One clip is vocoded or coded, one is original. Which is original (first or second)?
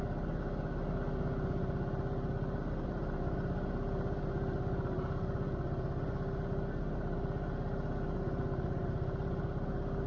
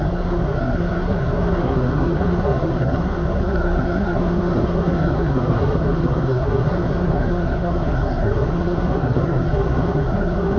first